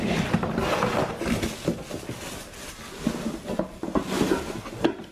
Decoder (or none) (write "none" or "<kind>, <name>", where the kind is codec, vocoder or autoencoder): none